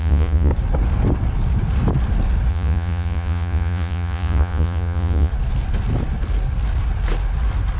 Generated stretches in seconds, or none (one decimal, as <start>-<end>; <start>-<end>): 0.0-0.5; 2.5-5.3